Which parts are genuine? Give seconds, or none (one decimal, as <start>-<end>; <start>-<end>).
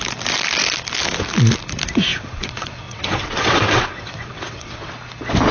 0.0-2.1; 4.9-5.5